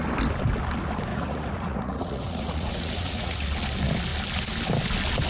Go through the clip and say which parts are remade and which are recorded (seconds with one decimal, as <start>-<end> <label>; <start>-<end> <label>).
0.0-1.1 recorded; 1.1-3.5 remade; 3.5-5.3 recorded